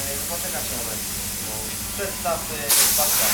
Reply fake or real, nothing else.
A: real